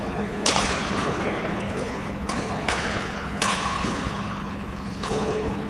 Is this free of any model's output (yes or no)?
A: no